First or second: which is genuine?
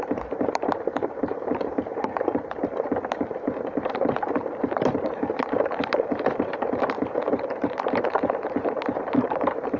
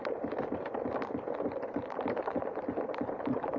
second